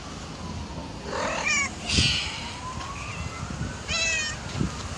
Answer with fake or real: real